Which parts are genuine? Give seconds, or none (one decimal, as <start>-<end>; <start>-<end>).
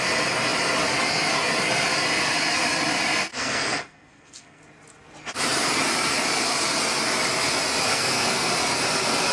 0.0-3.3; 4.6-7.9; 8.5-9.3